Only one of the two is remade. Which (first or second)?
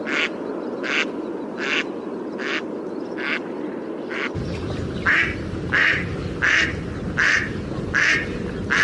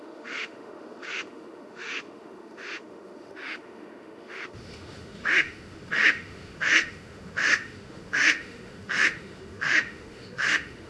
second